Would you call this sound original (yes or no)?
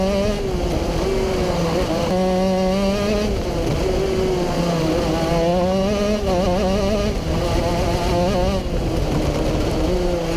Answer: yes